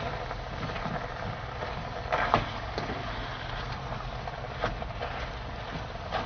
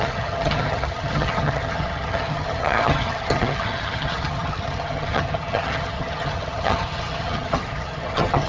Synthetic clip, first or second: second